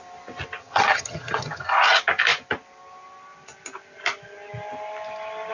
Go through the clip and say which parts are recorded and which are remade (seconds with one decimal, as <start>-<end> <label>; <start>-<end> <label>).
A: 0.0-0.6 recorded; 0.6-1.6 remade; 1.6-5.5 recorded

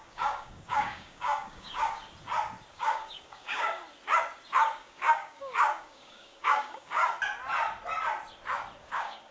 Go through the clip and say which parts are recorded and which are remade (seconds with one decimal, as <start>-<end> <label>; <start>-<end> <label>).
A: 0.0-2.0 remade; 2.0-2.7 recorded; 2.7-3.8 remade; 3.8-4.8 recorded; 4.8-7.0 remade; 7.0-8.8 recorded; 8.8-9.3 remade

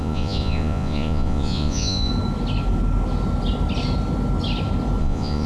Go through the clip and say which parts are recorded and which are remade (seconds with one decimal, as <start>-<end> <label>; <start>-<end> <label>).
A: 0.0-2.1 remade; 2.1-5.0 recorded; 5.0-5.5 remade

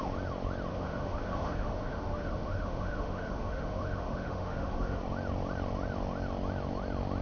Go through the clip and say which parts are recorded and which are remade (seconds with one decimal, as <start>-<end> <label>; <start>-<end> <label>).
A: 0.0-0.7 recorded; 0.7-5.0 remade; 5.0-7.2 recorded

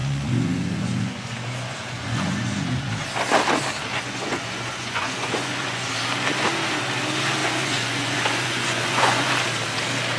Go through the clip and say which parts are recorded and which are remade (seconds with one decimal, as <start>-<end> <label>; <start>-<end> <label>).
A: 0.0-2.9 remade; 2.9-3.9 recorded; 3.9-5.9 remade; 5.9-7.4 recorded; 7.4-9.3 remade; 9.3-10.2 recorded